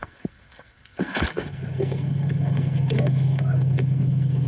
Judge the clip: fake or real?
fake